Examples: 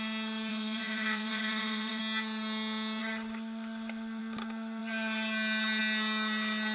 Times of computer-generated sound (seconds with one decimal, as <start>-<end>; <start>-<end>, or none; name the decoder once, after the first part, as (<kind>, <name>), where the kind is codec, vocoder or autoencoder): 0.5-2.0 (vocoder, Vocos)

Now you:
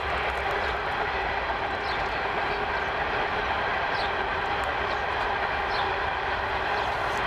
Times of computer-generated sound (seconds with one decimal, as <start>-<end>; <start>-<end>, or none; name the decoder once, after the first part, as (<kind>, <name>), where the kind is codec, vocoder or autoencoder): none

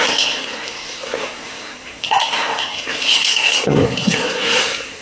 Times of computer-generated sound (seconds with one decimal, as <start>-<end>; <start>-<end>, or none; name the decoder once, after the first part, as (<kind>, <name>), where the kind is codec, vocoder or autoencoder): 0.0-5.0 (codec, SNAC)

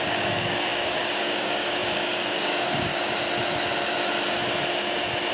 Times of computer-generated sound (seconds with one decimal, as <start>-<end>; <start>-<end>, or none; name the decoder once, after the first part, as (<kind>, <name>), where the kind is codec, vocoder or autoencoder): 0.0-2.9 (codec, DAC)

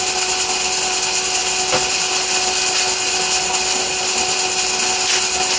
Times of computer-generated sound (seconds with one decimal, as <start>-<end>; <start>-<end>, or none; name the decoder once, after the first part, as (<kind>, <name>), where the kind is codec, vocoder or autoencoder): none